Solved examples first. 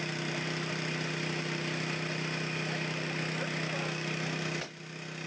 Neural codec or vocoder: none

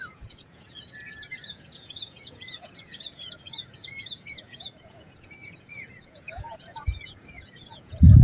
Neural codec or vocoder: vocoder, Vocos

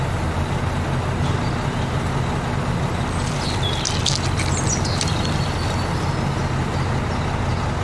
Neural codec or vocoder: none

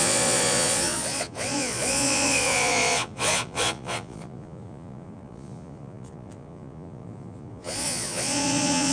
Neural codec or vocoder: vocoder, Vocos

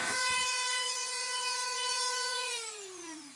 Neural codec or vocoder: vocoder, Vocos